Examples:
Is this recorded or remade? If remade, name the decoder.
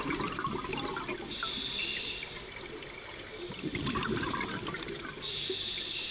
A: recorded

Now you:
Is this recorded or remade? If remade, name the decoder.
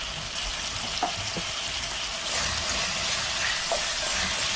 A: recorded